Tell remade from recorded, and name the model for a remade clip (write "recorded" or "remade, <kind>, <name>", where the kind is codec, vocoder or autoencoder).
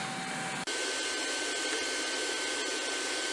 recorded